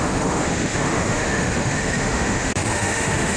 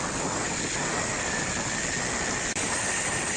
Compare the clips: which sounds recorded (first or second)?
second